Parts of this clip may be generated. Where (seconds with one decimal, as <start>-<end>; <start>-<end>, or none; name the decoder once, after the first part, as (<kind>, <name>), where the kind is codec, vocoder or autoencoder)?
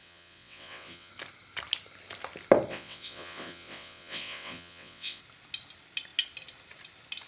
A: 0.0-1.1 (vocoder, WaveNeXt); 2.7-5.2